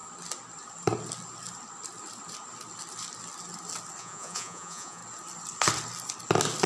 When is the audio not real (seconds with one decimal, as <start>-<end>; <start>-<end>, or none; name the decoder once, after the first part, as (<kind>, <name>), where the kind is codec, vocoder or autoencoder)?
4.0-5.0 (vocoder, Vocos)